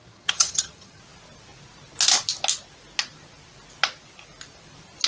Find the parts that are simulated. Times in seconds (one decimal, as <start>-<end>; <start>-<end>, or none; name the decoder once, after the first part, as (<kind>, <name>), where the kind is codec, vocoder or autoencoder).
0.0-1.0 (vocoder, HiFi-GAN)